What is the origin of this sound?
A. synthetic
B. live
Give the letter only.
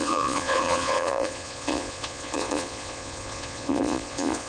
A